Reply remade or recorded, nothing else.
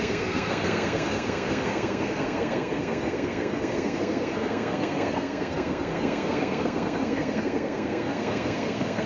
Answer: remade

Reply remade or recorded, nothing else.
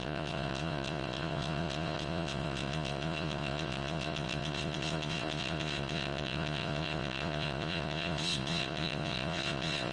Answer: remade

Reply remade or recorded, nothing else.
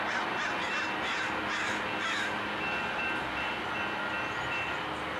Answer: recorded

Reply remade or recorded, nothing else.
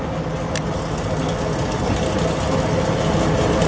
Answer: recorded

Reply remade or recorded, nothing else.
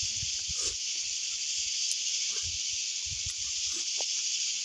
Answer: recorded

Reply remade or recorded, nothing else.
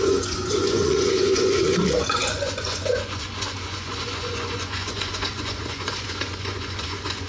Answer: remade